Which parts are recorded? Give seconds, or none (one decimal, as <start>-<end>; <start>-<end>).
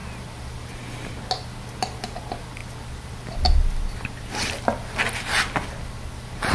0.0-6.5